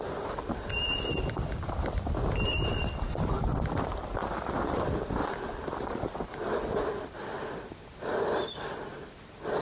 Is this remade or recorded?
remade